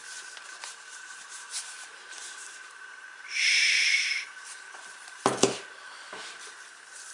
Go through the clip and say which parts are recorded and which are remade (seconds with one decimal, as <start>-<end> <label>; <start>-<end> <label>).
0.0-4.3 remade; 4.3-7.1 recorded